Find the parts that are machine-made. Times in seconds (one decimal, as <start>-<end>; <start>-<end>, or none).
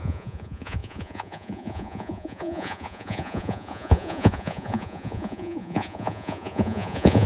0.0-7.3